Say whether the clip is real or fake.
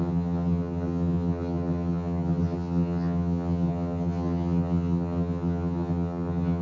fake